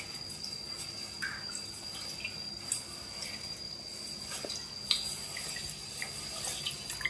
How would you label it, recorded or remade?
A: recorded